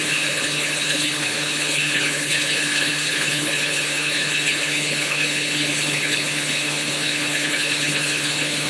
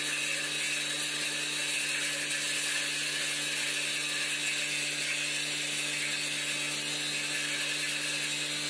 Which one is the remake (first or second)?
first